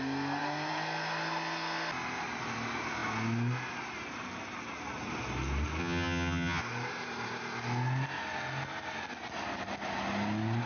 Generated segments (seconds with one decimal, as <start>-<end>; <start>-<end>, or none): 5.8-6.6